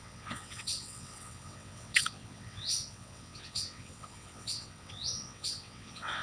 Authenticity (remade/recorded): remade